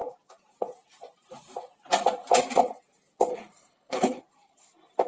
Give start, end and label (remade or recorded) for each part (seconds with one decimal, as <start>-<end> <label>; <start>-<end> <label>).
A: 0.0-3.3 recorded; 3.3-4.2 remade; 4.2-5.1 recorded